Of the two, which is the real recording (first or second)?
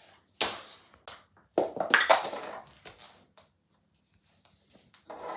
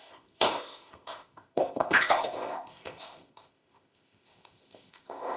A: first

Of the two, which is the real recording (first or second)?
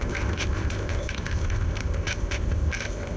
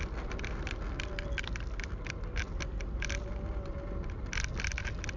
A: second